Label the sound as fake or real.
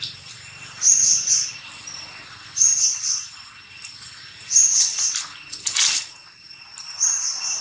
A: real